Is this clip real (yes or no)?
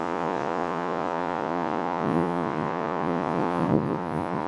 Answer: no